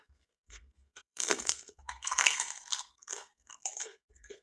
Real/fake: fake